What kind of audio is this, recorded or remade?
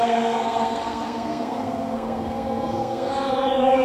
remade